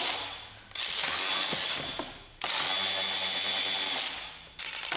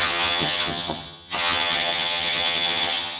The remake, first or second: second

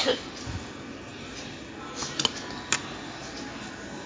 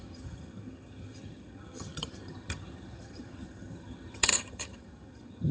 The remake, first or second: second